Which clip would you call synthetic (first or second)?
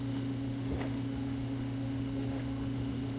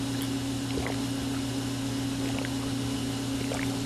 first